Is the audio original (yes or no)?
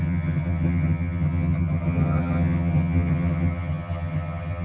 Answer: no